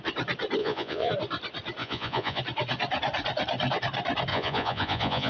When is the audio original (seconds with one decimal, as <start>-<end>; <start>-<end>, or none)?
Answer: 0.0-0.6; 1.1-1.8; 2.4-4.3